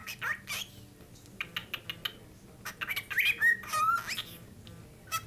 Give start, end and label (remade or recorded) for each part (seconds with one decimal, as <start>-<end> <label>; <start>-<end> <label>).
0.0-5.3 recorded